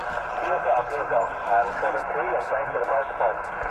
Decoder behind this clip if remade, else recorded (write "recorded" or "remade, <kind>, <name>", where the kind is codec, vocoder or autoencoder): recorded